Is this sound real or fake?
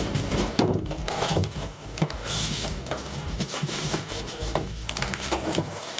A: fake